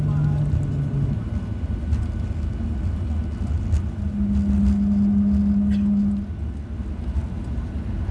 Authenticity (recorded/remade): recorded